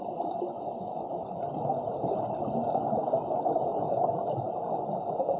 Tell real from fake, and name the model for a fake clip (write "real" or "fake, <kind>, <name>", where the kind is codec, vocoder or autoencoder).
real